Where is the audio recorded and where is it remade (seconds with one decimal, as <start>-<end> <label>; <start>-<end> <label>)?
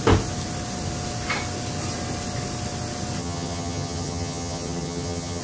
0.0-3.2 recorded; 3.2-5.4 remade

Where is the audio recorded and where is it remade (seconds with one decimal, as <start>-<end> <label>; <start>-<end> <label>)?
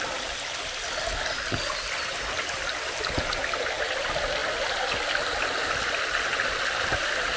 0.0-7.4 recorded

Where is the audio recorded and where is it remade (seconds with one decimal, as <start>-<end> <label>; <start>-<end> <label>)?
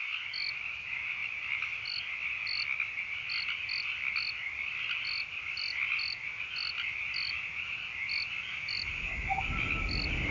0.0-10.3 recorded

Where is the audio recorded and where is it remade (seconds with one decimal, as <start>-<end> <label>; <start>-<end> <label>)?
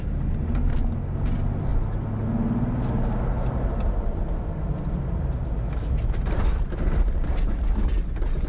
0.0-8.5 recorded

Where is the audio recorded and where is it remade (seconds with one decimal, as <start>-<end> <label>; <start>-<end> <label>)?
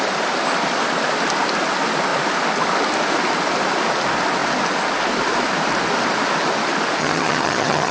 0.0-7.0 recorded; 7.0-7.9 remade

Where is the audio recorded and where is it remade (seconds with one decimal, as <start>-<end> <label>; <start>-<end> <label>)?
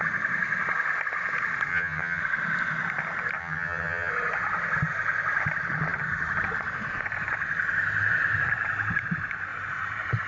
0.0-1.7 recorded; 1.7-2.2 remade; 2.2-3.4 recorded; 3.4-4.1 remade; 4.1-10.3 recorded